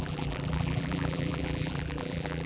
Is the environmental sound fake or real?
fake